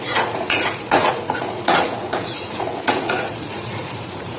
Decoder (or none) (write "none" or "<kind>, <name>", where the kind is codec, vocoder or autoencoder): vocoder, Vocos